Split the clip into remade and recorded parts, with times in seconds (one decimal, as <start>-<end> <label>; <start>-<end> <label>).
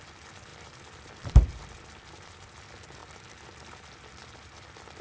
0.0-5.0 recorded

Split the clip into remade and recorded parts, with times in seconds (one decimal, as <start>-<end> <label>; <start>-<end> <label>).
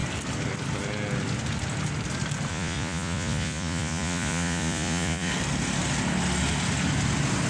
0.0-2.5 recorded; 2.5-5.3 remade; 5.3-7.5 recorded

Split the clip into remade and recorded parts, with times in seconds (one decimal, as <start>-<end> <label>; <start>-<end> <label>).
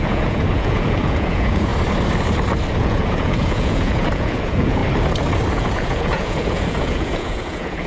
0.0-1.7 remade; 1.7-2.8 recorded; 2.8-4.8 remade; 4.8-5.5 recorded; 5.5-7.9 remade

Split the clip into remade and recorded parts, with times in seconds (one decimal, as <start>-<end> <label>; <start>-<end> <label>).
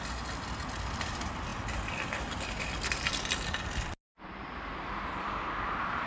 0.0-6.1 recorded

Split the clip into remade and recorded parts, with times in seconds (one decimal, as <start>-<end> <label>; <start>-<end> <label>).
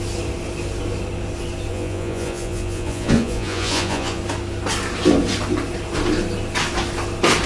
0.0-1.7 recorded; 1.7-4.2 remade; 4.2-7.5 recorded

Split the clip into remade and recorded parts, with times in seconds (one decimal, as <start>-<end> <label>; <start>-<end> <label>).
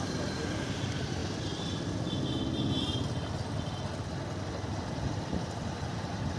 0.0-6.4 recorded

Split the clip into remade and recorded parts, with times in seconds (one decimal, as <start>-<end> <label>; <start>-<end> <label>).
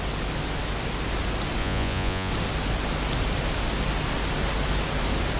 0.0-1.6 recorded; 1.6-2.3 remade; 2.3-5.4 recorded